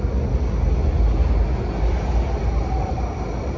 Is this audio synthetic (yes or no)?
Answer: no